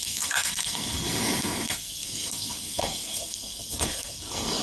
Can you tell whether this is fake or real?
fake